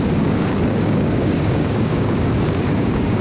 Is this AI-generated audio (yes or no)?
yes